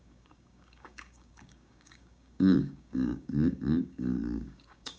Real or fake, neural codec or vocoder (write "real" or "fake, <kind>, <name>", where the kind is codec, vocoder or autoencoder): fake, codec, DAC